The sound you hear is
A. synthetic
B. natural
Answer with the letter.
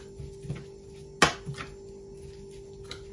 B